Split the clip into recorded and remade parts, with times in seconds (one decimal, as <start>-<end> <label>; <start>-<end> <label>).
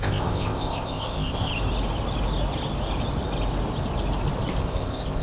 0.0-1.5 remade; 1.5-4.6 recorded; 4.6-5.2 remade